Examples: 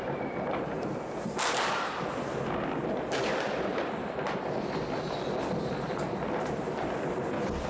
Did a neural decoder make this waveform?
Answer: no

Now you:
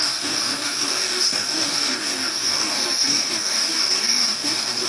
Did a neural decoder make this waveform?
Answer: yes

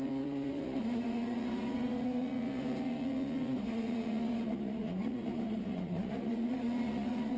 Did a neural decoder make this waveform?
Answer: yes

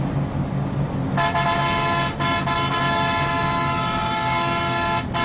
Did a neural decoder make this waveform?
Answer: no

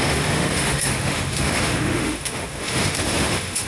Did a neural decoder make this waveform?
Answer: yes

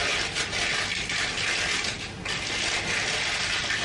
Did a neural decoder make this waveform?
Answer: no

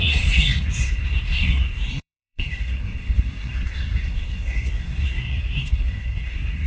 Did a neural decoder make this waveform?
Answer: yes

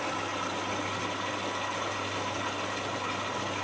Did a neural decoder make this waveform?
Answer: no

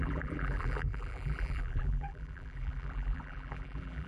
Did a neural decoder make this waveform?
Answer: yes